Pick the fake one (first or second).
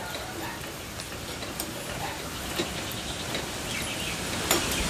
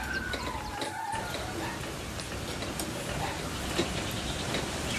first